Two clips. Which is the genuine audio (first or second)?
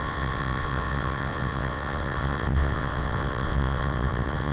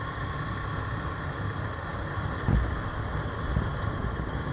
second